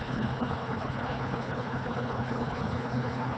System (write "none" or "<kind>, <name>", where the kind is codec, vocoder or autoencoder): codec, HILCodec